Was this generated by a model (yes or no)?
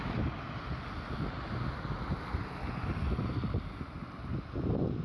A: no